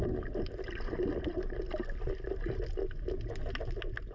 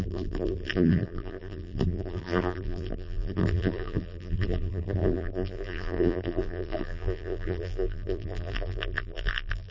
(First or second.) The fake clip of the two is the second